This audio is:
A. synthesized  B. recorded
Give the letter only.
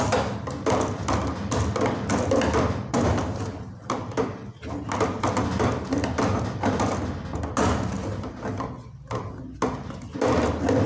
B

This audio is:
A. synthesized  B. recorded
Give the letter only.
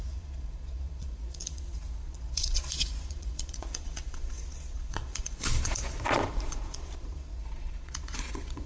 A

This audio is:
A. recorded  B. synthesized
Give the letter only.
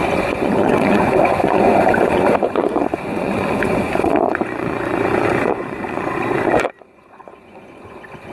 B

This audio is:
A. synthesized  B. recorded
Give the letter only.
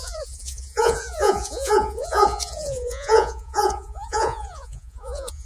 A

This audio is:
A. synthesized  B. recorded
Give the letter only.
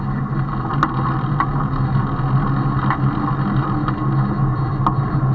B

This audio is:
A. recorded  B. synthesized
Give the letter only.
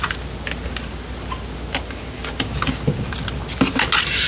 A